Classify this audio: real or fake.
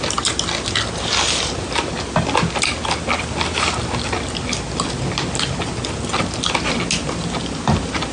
real